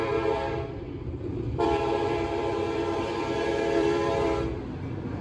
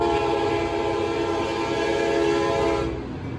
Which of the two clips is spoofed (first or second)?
first